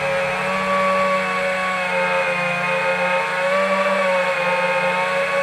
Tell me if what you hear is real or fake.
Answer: real